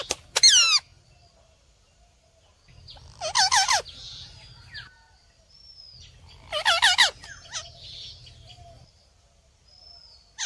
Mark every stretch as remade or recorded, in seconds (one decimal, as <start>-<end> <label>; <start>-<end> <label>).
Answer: 0.0-10.5 recorded